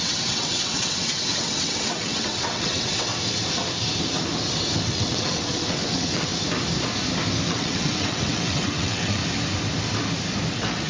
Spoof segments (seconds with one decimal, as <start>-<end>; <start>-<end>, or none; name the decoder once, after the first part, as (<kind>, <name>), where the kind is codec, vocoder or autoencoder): 0.0-3.1 (vocoder, WaveNeXt); 4.9-6.3; 7.5-9.2; 10.5-10.9